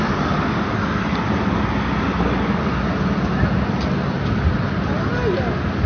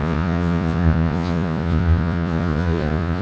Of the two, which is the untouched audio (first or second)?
first